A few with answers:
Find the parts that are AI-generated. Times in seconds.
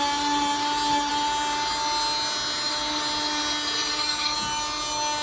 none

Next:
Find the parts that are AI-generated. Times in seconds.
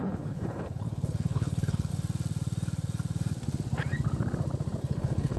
0.0-1.9; 4.8-5.4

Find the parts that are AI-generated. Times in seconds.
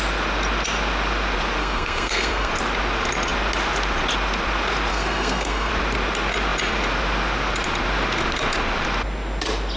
1.6-2.5; 4.9-5.7